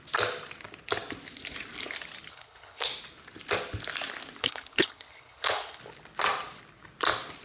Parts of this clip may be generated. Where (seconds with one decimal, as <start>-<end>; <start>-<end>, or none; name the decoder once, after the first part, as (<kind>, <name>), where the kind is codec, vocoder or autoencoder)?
2.3-2.9 (codec, HILCodec); 4.4-5.8